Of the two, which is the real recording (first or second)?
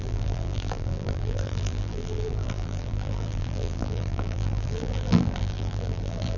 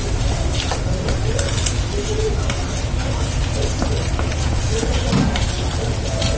second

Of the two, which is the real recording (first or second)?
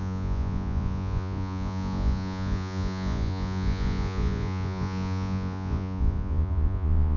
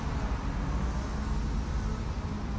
second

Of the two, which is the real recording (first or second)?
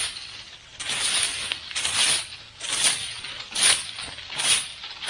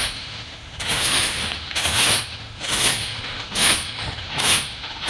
first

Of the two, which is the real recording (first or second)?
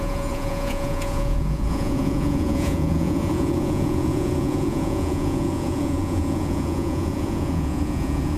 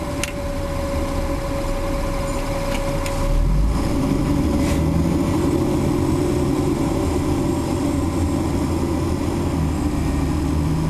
second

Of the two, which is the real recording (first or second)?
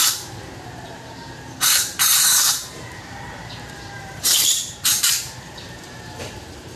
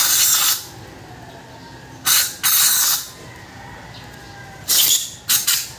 second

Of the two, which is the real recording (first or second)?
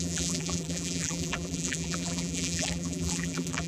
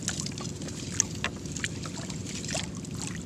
second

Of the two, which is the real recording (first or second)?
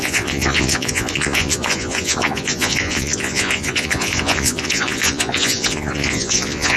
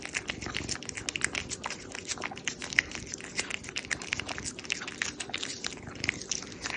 second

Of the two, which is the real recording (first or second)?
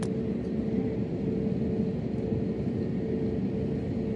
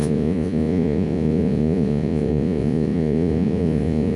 first